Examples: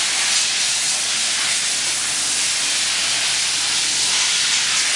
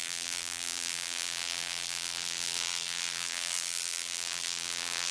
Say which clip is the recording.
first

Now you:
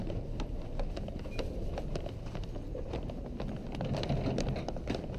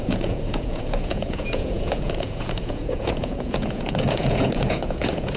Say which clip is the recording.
first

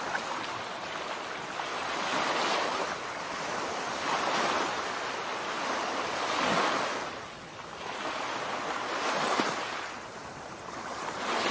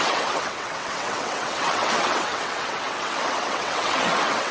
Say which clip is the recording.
first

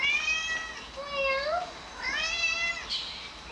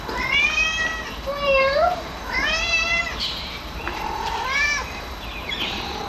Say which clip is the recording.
first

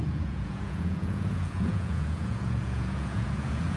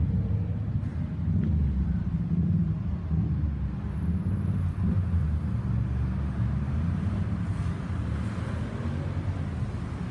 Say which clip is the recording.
second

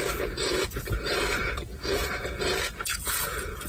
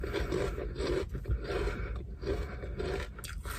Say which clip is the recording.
second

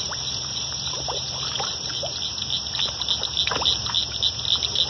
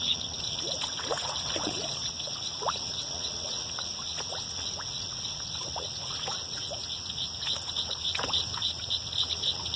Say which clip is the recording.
first